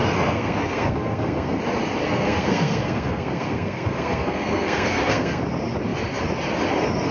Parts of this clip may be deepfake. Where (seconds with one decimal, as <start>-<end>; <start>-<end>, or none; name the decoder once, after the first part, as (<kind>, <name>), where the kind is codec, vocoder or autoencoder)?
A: 0.0-1.6 (codec, SNAC); 2.0-5.4